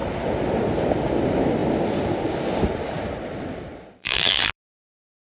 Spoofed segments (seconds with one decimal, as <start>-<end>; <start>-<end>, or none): 4.0-4.5